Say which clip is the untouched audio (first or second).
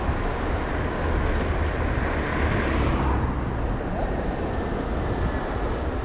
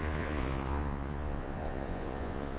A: first